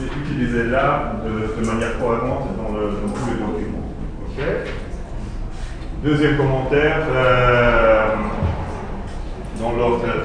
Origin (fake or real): real